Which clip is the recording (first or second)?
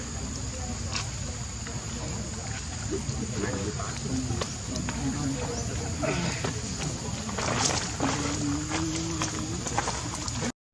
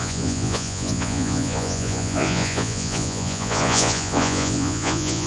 first